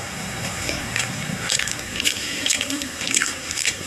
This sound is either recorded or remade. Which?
remade